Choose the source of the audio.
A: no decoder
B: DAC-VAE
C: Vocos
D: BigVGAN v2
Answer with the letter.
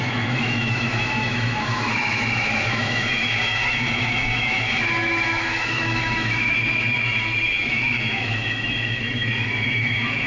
B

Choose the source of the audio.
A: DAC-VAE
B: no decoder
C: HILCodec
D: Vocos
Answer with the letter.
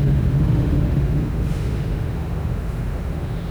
A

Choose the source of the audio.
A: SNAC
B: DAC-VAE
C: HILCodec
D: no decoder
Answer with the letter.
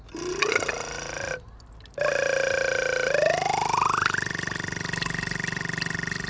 D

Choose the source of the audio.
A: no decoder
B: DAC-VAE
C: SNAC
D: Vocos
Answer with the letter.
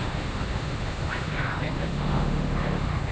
B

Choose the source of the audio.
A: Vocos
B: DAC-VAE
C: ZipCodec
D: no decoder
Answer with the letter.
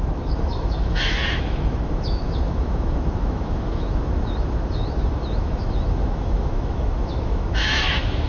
B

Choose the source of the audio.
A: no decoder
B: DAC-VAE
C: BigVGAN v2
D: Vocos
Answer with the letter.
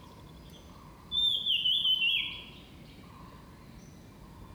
A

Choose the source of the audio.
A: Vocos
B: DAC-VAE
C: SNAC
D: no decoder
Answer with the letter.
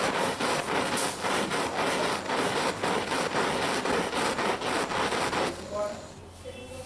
D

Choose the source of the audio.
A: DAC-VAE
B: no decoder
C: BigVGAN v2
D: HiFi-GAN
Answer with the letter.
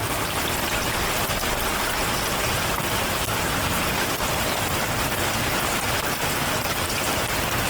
B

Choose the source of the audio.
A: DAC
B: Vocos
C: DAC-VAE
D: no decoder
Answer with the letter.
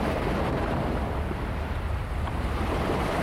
D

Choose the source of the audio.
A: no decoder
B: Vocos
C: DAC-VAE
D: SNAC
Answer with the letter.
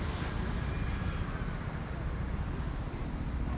A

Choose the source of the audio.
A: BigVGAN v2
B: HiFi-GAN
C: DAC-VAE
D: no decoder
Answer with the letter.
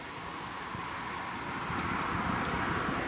D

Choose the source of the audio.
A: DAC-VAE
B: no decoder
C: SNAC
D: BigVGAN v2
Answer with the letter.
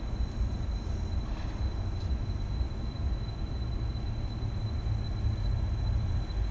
B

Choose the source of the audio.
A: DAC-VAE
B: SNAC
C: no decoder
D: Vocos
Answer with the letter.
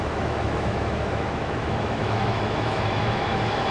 A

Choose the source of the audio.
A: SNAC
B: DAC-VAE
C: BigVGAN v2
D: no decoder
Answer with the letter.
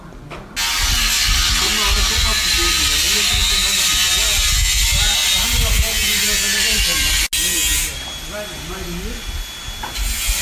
D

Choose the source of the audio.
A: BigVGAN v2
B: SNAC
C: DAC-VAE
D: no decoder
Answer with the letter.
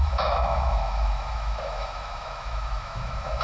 C